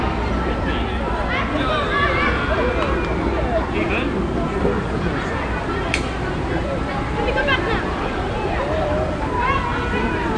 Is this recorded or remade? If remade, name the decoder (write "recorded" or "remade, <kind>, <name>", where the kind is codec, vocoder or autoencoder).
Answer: recorded